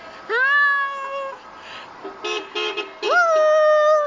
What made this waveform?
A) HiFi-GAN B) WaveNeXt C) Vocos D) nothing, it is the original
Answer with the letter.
D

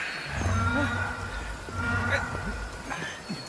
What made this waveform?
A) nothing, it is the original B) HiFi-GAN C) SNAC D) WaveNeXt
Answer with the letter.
A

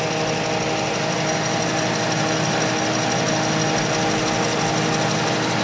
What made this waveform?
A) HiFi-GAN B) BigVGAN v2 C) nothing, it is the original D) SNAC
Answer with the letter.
C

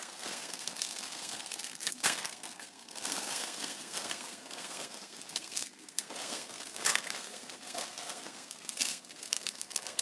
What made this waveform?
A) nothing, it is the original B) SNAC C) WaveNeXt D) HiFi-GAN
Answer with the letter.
B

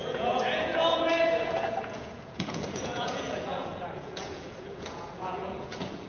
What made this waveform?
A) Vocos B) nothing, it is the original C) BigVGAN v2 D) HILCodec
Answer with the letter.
A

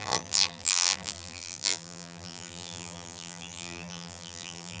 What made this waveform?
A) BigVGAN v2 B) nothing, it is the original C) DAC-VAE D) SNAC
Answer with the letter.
A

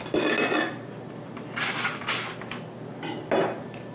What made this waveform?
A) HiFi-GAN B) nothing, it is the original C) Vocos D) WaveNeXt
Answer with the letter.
B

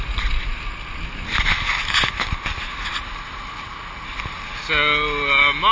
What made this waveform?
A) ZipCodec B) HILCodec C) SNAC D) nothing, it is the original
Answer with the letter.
D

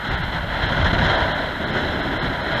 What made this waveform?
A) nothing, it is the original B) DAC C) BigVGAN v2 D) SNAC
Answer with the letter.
A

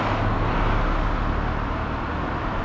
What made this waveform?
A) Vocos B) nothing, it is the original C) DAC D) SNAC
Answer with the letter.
B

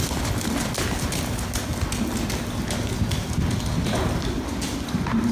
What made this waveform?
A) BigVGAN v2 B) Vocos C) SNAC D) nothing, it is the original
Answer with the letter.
D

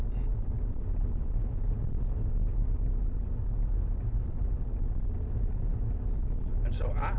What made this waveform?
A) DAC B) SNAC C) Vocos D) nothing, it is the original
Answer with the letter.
D